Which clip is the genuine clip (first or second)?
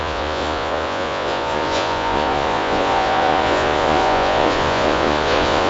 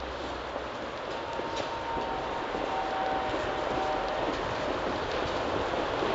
second